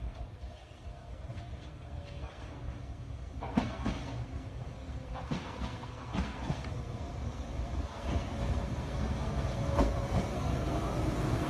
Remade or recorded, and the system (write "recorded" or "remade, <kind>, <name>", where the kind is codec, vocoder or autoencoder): remade, codec, SNAC